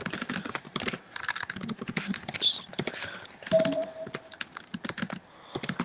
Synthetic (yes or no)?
yes